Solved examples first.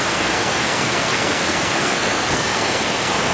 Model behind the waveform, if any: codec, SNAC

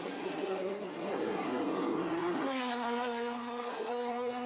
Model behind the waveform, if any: codec, SNAC